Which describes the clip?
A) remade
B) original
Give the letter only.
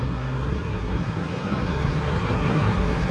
A